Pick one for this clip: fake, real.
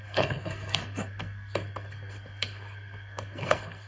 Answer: fake